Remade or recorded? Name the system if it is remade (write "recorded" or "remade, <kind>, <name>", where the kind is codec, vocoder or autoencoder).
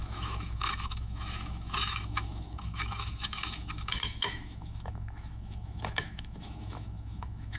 remade, autoencoder, DAC-VAE